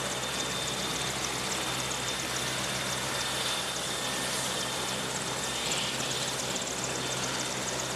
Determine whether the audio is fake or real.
real